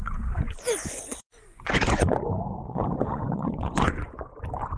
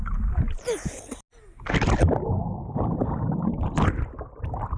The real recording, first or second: second